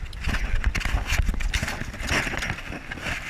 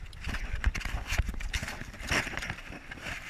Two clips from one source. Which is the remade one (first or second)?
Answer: second